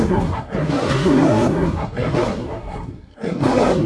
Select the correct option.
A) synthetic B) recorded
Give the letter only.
A